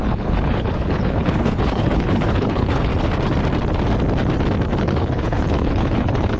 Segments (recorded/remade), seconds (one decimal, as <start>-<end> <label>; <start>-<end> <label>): 0.0-2.9 remade; 2.9-4.8 recorded; 4.8-6.4 remade